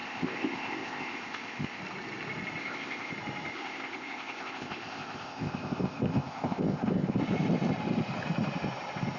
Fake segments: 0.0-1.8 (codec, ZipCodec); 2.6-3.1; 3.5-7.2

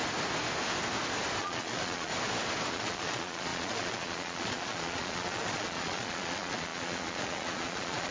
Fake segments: 1.4-2.1 (vocoder, Vocos); 2.7-8.1

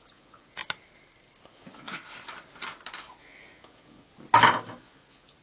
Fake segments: 0.0-0.6 (vocoder, Vocos); 1.5-2.0; 3.0-4.1; 4.8-5.4

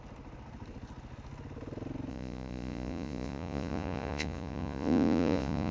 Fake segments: 2.1-5.7 (vocoder, Vocos)

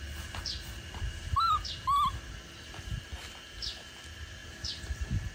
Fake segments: none

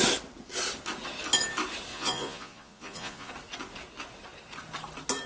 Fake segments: 1.9-3.3 (vocoder, Vocos)